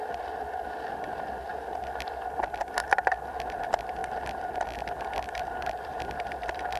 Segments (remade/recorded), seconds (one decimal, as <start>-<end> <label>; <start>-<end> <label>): 0.0-6.8 recorded